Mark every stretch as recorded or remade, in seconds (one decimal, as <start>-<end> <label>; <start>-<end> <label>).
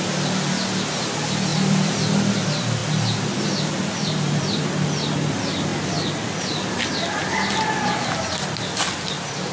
0.0-1.5 recorded; 1.5-2.1 remade; 2.1-9.5 recorded